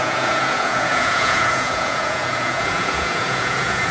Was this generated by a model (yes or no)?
yes